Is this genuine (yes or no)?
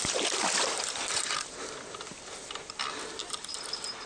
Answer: yes